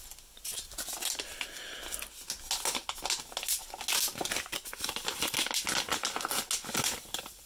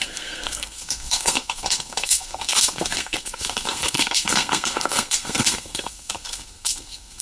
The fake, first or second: second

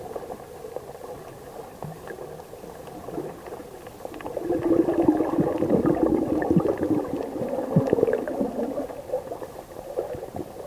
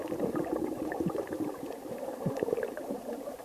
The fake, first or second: second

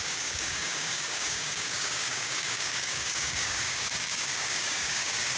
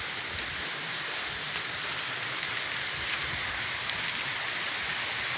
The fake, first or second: first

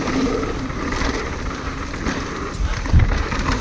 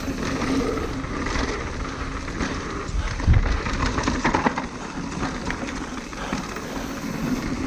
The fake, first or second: first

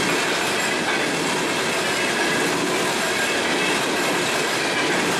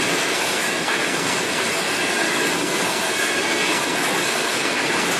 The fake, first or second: second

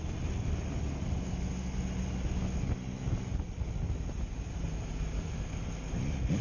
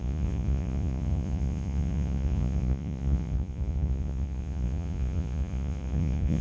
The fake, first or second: second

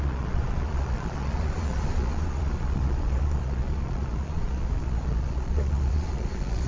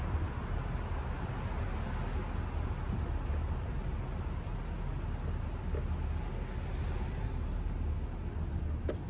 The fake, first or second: first